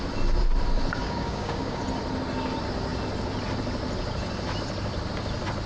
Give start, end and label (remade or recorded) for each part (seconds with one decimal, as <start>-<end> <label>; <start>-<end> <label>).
0.0-1.0 recorded; 1.0-1.8 remade; 1.8-5.7 recorded